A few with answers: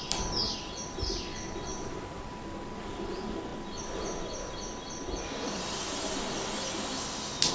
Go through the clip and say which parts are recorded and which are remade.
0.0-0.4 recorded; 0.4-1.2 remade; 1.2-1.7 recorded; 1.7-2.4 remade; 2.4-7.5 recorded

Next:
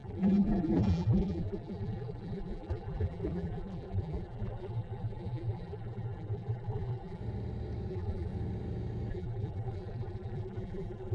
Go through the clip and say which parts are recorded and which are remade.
0.0-7.2 remade; 7.2-7.9 recorded; 7.9-8.3 remade; 8.3-9.1 recorded; 9.1-11.1 remade

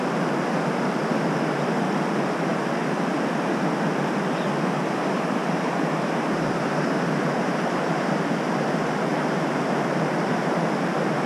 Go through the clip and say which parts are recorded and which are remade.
0.0-5.0 recorded; 5.0-8.0 remade; 8.0-9.1 recorded; 9.1-10.5 remade; 10.5-11.3 recorded

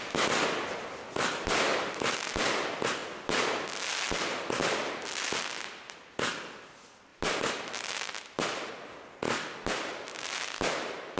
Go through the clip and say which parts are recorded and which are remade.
0.0-7.1 recorded; 7.1-8.7 remade; 8.7-11.2 recorded

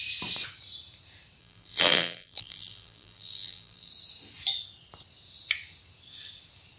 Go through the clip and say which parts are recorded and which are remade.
0.0-1.4 recorded; 1.4-3.9 remade; 3.9-6.8 recorded

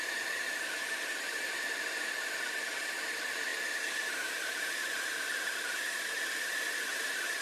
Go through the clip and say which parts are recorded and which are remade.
0.0-3.5 recorded; 3.5-6.2 remade; 6.2-7.4 recorded

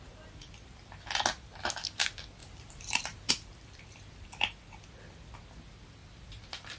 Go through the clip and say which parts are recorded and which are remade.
0.0-2.4 recorded; 2.4-3.3 remade; 3.3-6.0 recorded; 6.0-6.8 remade